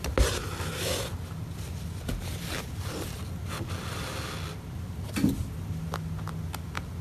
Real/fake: real